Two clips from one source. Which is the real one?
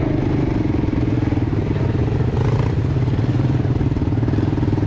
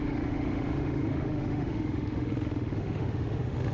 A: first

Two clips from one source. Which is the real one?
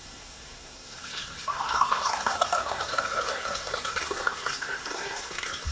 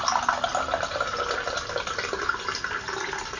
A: second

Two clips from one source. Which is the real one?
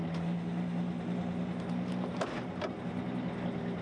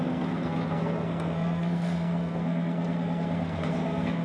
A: first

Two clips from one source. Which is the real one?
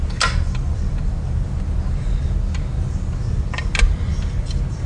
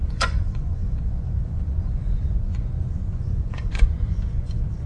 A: first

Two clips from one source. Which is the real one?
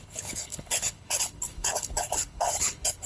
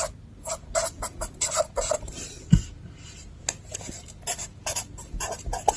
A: second